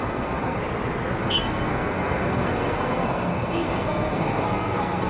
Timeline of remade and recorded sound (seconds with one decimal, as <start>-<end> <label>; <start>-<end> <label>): 0.0-0.6 remade; 0.6-1.2 recorded; 1.2-5.1 remade

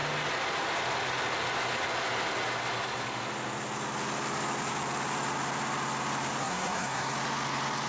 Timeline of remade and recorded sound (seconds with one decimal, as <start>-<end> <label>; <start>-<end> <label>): 0.0-6.4 recorded; 6.4-7.1 remade; 7.1-7.9 recorded